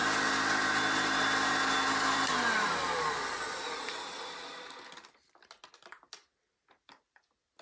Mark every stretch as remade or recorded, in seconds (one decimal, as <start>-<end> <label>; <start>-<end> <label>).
0.0-7.6 recorded